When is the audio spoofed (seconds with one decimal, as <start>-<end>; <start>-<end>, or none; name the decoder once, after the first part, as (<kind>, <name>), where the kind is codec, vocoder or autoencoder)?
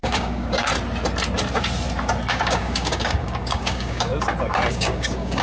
0.0-0.7 (codec, DAC); 2.3-4.1; 4.7-5.4